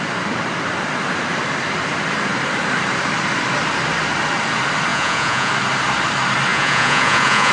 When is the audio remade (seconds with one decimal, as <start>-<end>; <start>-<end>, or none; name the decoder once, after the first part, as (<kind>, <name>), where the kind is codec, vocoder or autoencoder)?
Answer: 4.9-5.5 (vocoder, Vocos); 6.5-7.5